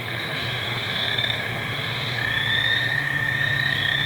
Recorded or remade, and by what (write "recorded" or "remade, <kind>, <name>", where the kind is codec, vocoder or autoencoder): remade, autoencoder, DAC-VAE